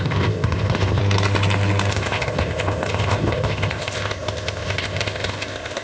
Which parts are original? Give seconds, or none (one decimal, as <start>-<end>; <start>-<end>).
1.0-1.9

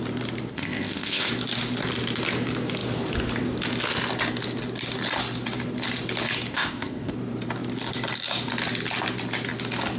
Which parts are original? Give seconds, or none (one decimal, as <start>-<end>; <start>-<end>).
0.0-0.5; 1.3-6.5; 7.1-10.0